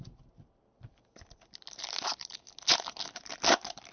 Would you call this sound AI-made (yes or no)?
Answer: no